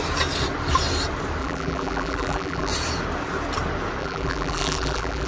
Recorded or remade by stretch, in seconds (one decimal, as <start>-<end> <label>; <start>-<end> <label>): 0.0-1.4 recorded; 1.4-2.7 remade; 2.7-4.0 recorded; 4.0-5.3 remade

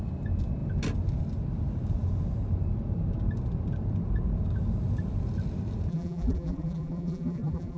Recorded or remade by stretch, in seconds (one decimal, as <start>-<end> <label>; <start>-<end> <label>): 0.0-5.9 recorded; 5.9-7.8 remade

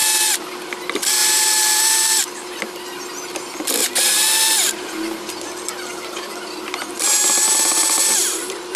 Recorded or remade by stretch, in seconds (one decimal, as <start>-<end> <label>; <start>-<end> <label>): 0.0-1.2 recorded; 1.2-2.6 remade; 2.6-3.8 recorded; 3.8-6.3 remade; 6.3-8.8 recorded